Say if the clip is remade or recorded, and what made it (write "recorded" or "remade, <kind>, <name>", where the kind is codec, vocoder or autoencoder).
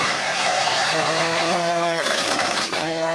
remade, codec, SNAC